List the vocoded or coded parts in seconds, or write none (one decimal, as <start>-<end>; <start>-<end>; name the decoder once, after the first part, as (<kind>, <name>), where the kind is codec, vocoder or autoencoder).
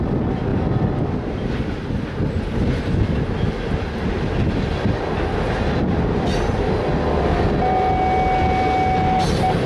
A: none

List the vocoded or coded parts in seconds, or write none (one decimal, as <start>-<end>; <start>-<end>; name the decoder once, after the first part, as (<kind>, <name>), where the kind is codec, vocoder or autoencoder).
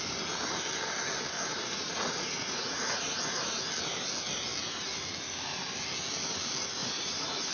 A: 1.5-3.7 (vocoder, Vocos); 6.8-7.5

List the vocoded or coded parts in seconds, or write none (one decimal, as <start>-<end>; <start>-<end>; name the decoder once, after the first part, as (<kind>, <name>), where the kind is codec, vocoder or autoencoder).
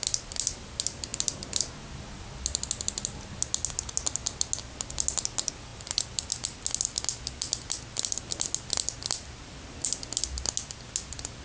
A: none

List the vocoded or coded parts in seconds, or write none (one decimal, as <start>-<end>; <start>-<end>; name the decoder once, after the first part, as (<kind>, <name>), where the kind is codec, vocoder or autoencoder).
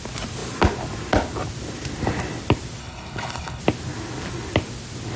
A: 2.8-3.6 (codec, HILCodec)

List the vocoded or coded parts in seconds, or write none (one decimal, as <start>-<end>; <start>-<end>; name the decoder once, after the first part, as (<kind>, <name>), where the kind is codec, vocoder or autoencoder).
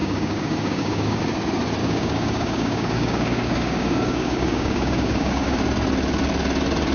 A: 0.0-1.2 (codec, DAC); 1.8-5.6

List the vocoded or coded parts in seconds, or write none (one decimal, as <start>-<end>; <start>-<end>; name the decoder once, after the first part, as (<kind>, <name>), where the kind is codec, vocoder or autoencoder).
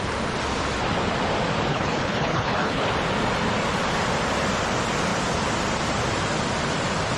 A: 1.7-2.9 (codec, HILCodec)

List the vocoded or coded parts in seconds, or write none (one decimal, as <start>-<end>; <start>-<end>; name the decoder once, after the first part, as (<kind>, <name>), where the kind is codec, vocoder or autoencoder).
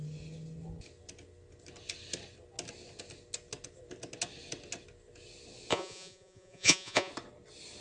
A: 5.7-7.1 (vocoder, Vocos)